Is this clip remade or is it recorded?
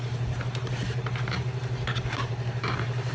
remade